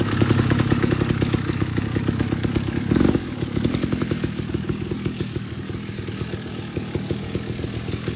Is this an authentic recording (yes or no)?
no